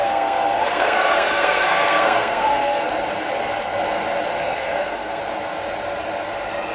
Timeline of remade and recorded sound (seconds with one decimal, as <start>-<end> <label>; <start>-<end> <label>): 0.0-2.9 remade; 2.9-4.3 recorded; 4.3-5.2 remade; 5.2-6.7 recorded